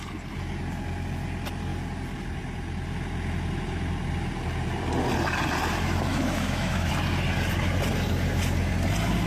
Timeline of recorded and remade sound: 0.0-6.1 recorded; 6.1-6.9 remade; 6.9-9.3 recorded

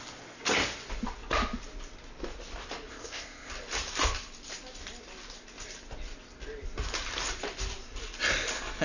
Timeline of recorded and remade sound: 0.0-2.9 recorded; 2.9-3.5 remade; 3.5-8.8 recorded

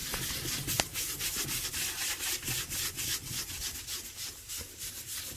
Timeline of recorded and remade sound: 0.0-5.4 recorded